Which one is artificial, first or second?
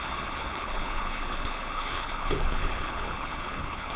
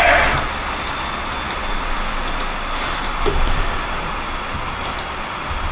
first